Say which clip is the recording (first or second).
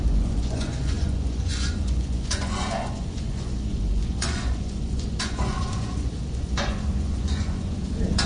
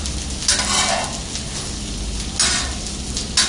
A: second